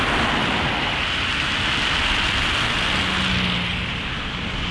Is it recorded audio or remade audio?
recorded